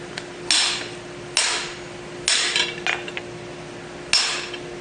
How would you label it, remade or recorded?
recorded